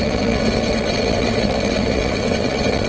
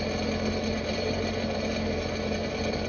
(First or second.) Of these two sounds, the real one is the second